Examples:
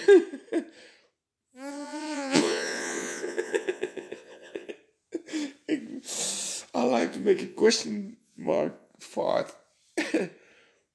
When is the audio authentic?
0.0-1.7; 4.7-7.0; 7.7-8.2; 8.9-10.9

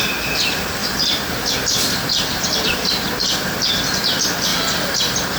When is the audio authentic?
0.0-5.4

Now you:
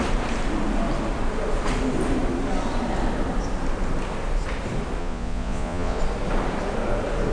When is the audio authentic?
0.0-5.0; 6.0-7.3

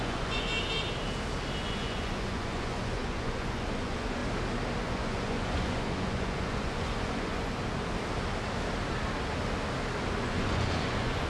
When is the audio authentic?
0.5-1.6; 4.2-4.8; 7.6-10.2

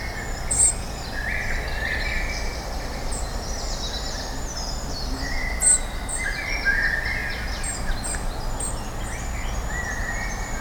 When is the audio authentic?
0.0-10.6